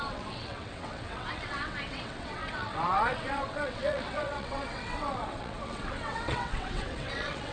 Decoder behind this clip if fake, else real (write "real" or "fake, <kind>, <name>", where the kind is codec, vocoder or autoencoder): fake, vocoder, WaveNeXt